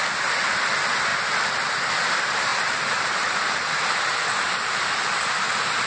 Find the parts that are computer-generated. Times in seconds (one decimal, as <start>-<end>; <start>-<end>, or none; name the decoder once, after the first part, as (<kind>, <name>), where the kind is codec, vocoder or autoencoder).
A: 2.5-5.3 (vocoder, BigVGAN v2)